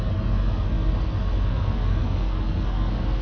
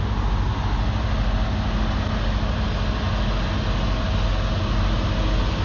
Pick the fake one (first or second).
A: first